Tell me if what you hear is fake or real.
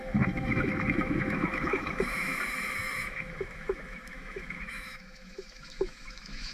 fake